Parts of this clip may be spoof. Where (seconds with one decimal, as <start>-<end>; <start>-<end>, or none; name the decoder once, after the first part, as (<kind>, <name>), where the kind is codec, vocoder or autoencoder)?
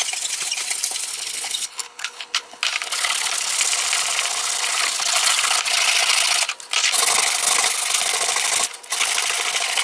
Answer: 1.1-2.6 (codec, HILCodec)